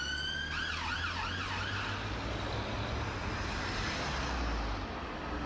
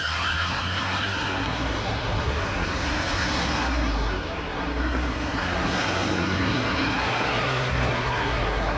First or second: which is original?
first